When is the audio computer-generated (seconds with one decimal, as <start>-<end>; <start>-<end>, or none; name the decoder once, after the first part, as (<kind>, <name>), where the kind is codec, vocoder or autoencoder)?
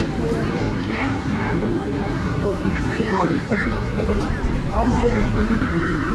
0.5-4.2 (codec, SNAC); 4.7-6.1